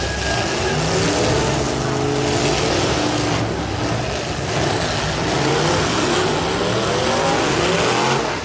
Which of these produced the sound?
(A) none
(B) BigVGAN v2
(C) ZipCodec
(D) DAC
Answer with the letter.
A